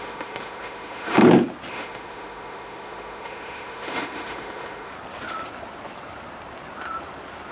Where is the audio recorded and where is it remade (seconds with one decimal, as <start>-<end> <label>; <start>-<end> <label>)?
0.0-1.2 remade; 1.2-1.7 recorded; 1.7-4.9 remade; 4.9-7.5 recorded